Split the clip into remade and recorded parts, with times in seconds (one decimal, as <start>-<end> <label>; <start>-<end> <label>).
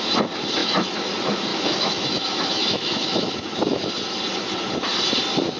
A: 0.0-0.6 recorded; 0.6-1.1 remade; 1.1-1.5 recorded; 1.5-3.9 remade; 3.9-5.6 recorded